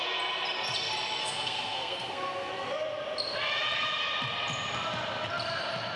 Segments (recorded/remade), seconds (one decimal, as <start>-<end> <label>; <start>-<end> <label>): 0.0-1.2 recorded; 1.2-2.5 remade; 2.5-6.0 recorded